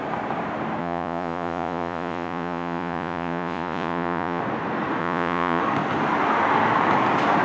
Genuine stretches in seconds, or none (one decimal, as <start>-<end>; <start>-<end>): 0.0-0.8; 4.4-5.0; 5.6-7.4